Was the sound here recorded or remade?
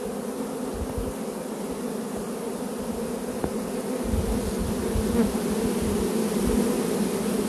recorded